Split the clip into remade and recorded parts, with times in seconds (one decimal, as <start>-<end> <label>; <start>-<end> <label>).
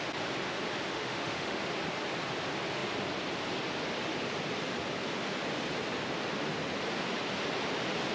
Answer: 0.0-0.9 recorded; 0.9-1.6 remade; 1.6-8.1 recorded